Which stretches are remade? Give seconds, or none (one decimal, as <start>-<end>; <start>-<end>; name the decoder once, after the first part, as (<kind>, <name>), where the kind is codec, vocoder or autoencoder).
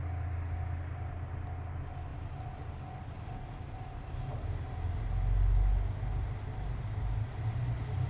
none